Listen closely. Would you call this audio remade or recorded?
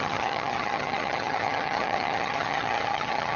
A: remade